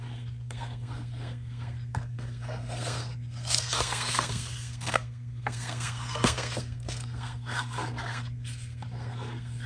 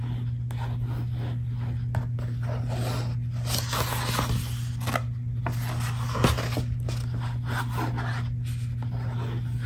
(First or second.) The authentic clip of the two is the second